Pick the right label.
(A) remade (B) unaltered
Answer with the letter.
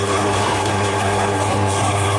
A